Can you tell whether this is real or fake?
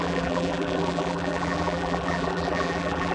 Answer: fake